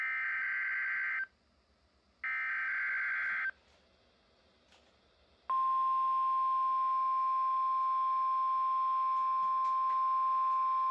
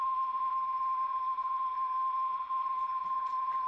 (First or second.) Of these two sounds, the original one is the first